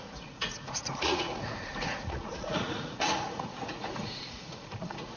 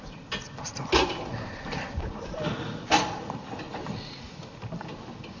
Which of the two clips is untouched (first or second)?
second